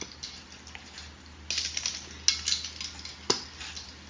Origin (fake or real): real